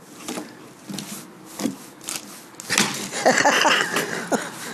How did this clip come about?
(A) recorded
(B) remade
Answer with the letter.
A